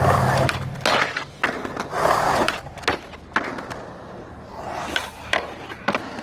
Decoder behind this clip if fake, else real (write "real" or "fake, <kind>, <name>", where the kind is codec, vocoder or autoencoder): real